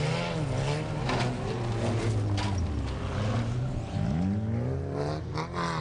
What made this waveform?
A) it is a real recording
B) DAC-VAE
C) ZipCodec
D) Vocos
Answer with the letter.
A